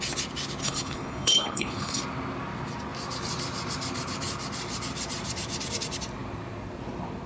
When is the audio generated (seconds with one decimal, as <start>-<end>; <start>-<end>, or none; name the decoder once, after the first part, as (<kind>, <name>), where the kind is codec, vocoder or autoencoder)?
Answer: 0.6-2.0 (codec, HILCodec)